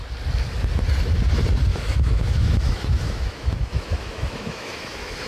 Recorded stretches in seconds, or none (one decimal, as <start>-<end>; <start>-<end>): 0.0-1.7